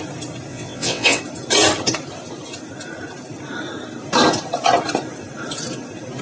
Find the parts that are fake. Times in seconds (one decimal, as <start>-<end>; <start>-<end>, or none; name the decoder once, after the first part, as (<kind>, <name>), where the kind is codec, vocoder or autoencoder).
0.5-1.2 (vocoder, WaveNeXt)